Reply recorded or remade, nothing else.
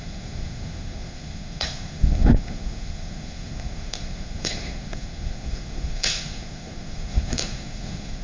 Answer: remade